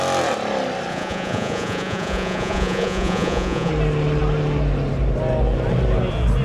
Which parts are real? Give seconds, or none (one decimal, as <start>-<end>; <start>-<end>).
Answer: 0.0-0.9; 3.7-6.4